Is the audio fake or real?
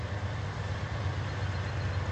real